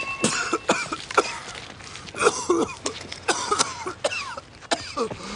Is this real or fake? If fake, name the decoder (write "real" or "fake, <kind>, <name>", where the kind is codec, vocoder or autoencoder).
real